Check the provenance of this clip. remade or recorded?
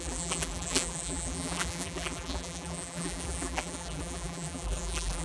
remade